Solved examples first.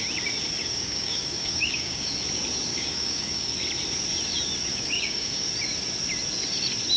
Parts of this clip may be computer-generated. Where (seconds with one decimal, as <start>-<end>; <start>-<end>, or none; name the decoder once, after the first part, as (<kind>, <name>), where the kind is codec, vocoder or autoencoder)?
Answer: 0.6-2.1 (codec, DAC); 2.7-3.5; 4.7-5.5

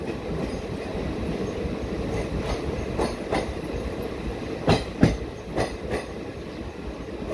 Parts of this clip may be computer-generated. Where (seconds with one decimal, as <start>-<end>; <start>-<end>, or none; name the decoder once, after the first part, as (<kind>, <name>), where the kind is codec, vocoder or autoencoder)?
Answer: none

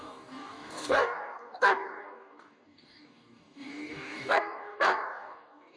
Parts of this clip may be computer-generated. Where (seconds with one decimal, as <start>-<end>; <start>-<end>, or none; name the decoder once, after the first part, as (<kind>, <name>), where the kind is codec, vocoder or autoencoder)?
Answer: 0.0-5.8 (codec, DAC)